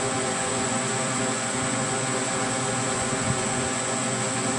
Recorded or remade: remade